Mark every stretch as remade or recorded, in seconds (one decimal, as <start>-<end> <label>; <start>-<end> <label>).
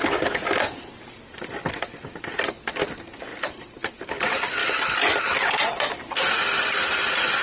0.0-7.4 recorded